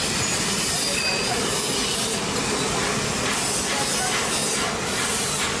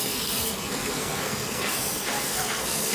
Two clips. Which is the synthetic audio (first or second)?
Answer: second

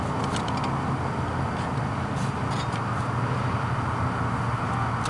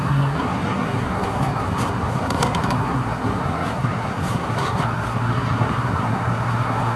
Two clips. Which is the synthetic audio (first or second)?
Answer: second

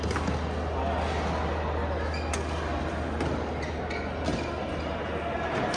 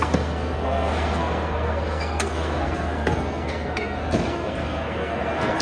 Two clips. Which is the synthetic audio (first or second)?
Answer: second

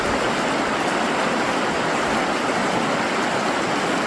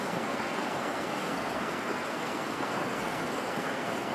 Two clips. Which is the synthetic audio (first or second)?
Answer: second